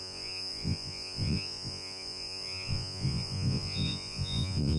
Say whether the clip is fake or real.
fake